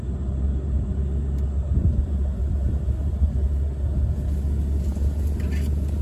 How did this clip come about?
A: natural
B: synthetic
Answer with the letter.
A